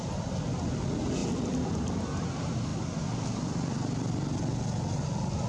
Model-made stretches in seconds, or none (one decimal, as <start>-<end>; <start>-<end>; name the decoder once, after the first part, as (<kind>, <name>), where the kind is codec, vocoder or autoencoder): 1.2-1.7 (vocoder, BigVGAN v2); 2.7-4.4